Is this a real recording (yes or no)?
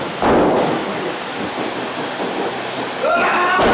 yes